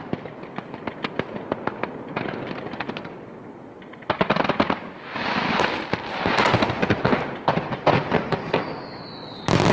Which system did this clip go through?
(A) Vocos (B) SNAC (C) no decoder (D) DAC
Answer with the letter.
C